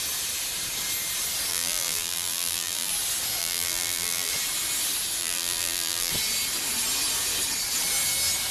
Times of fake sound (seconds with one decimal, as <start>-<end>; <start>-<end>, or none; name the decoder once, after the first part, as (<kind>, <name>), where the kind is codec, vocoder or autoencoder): 1.5-2.9 (vocoder, BigVGAN v2); 3.4-4.3; 5.2-6.1